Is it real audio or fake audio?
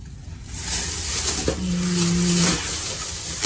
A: real